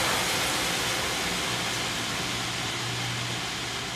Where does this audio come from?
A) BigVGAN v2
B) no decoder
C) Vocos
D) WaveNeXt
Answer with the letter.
B